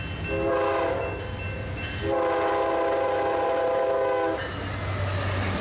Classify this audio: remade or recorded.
recorded